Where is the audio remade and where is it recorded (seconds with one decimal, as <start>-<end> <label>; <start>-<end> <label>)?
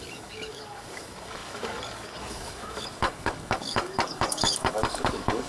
0.0-5.5 remade